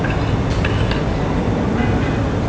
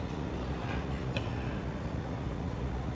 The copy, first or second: second